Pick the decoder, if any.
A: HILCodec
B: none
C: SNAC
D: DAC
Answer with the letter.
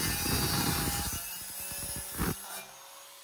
B